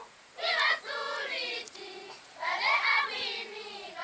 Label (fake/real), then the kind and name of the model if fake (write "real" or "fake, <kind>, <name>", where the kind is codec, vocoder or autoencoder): fake, vocoder, Vocos